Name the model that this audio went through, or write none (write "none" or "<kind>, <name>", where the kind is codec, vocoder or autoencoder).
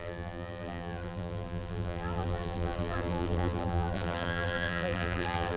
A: vocoder, BigVGAN v2